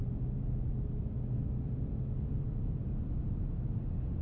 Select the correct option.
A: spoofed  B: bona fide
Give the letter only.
B